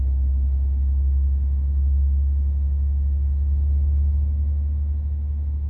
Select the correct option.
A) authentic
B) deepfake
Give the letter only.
A